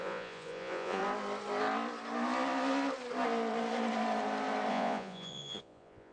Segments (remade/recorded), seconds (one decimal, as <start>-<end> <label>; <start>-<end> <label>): 0.0-1.0 remade; 1.0-4.7 recorded; 4.7-6.1 remade